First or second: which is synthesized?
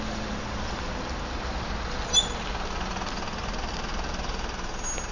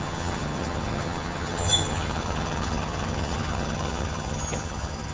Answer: second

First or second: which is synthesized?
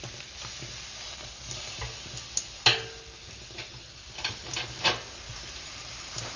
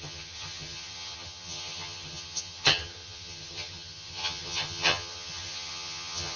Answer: second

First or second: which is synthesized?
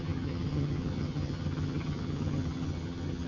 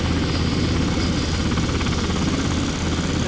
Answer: first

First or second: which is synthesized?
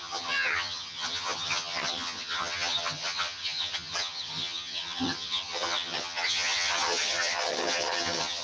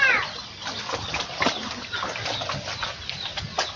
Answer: first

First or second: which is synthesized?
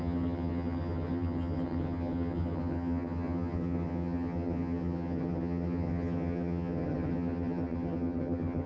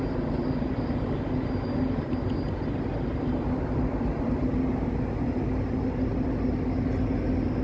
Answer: first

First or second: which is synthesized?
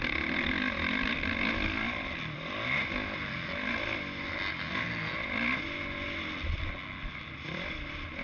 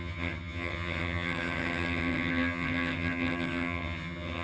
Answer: second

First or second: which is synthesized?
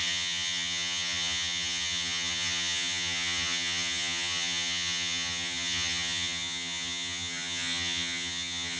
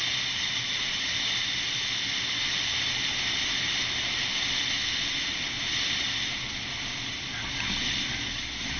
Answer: first